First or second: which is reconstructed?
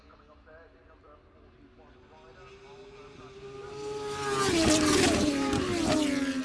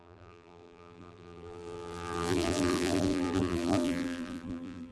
second